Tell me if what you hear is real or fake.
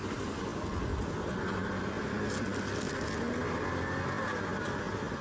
real